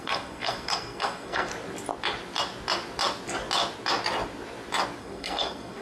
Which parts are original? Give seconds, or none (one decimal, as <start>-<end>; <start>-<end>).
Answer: 1.5-5.0